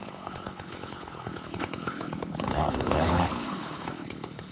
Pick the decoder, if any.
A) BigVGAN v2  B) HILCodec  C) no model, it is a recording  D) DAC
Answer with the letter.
B